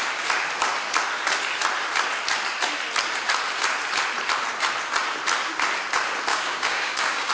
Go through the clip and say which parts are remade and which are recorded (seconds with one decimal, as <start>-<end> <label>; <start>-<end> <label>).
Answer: 0.0-6.3 recorded; 6.3-7.3 remade